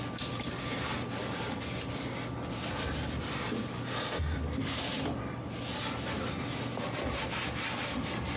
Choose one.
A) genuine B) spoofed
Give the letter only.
A